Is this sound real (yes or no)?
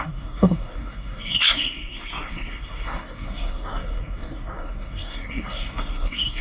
no